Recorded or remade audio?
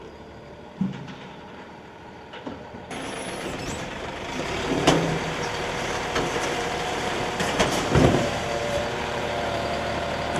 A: remade